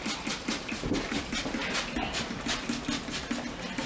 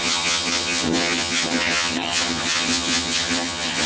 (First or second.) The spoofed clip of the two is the second